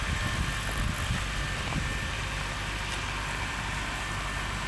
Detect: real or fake real